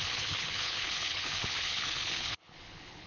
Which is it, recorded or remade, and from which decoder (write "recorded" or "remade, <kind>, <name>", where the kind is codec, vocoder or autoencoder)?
remade, codec, HILCodec